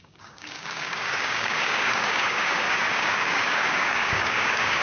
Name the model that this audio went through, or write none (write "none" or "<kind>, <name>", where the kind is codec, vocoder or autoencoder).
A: codec, DAC